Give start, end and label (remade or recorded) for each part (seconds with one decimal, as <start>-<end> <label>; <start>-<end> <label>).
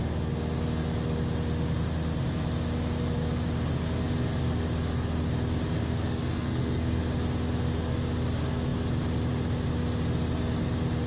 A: 0.0-5.8 recorded; 5.8-7.0 remade; 7.0-11.1 recorded